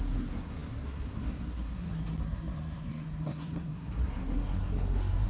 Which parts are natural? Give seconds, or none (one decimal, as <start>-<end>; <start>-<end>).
none